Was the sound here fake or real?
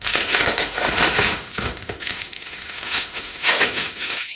fake